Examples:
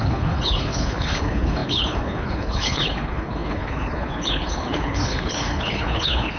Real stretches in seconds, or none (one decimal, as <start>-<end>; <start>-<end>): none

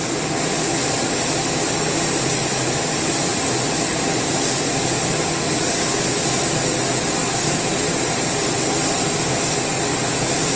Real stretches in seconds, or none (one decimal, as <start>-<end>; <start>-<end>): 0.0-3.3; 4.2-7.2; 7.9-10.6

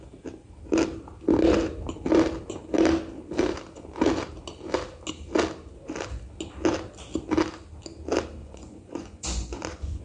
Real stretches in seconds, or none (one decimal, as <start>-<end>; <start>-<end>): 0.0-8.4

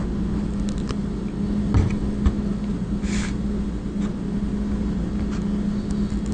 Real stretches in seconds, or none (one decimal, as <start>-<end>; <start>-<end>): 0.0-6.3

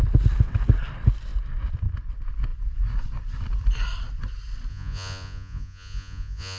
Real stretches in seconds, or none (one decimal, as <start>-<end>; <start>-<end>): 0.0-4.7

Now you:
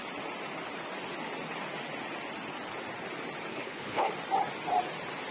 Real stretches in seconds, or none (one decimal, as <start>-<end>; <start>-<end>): 0.0-3.5; 4.1-5.3

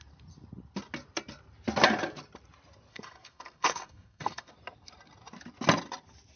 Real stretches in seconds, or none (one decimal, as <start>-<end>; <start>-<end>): 0.0-2.9; 4.5-6.4

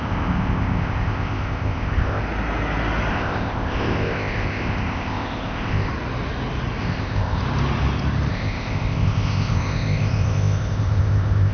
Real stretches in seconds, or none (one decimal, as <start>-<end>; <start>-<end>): 2.2-3.1; 5.9-6.8; 7.4-8.3